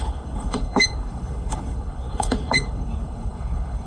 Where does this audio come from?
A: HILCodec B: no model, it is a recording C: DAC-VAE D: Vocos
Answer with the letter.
A